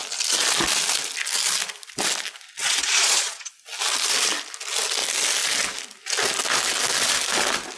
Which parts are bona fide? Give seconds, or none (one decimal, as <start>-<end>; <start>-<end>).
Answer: 0.0-2.6; 3.5-7.8